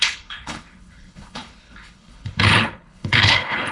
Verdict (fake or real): fake